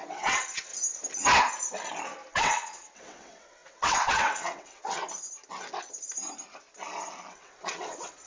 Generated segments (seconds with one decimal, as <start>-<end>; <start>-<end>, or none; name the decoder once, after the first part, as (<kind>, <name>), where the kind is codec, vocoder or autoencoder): 0.0-0.7 (vocoder, WaveNeXt); 2.3-5.0; 7.3-8.3